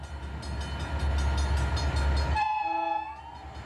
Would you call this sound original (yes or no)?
yes